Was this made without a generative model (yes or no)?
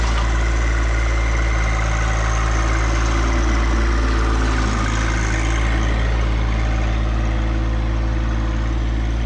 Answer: yes